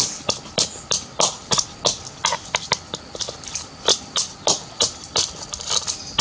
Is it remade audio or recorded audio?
recorded